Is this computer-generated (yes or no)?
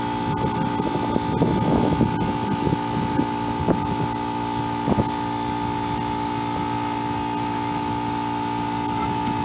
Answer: no